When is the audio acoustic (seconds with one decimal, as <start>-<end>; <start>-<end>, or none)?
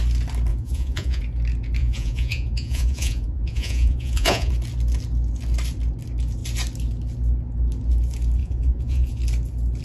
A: 0.0-0.5; 1.2-1.8; 4.5-8.4; 9.2-9.8